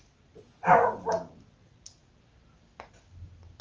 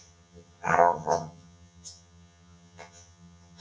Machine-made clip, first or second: second